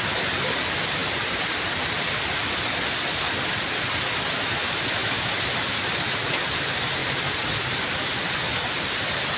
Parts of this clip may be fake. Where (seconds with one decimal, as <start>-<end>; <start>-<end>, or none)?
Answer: 1.0-2.5; 7.0-9.4